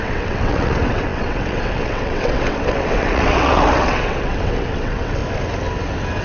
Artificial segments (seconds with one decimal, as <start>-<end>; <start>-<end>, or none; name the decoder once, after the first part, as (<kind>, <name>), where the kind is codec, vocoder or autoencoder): 0.0-5.2 (vocoder, WaveNeXt)